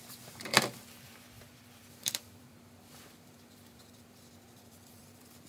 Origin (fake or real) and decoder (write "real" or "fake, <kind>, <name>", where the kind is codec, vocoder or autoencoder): fake, vocoder, BigVGAN v2